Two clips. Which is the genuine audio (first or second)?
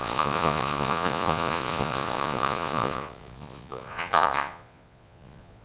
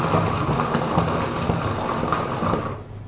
second